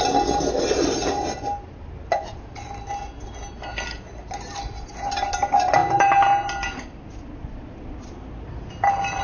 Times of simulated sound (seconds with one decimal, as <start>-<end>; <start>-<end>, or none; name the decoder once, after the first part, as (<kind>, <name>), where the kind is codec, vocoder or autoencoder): none